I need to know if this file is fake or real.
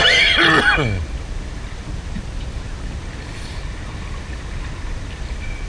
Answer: real